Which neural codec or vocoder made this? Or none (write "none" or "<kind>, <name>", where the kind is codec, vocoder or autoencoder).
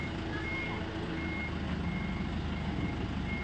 none